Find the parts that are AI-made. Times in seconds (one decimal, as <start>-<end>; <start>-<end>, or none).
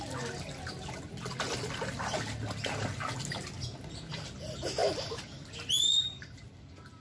none